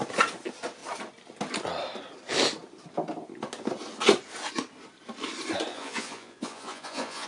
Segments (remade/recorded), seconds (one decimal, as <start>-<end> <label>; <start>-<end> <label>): 0.0-5.7 recorded; 5.7-7.3 remade